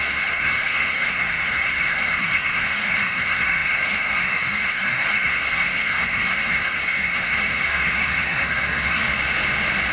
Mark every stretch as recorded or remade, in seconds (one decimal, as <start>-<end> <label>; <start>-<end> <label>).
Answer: 0.0-9.0 remade; 9.0-9.9 recorded